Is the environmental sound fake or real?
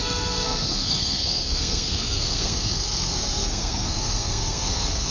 fake